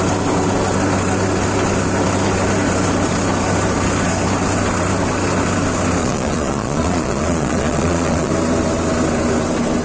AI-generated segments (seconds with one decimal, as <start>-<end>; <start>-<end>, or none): 6.0-8.3